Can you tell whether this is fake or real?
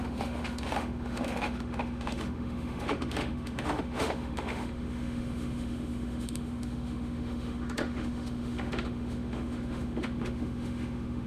fake